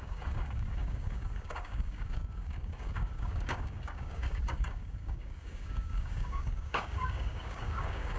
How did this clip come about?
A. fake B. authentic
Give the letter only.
A